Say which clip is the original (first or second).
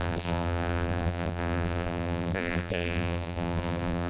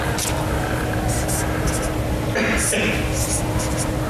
second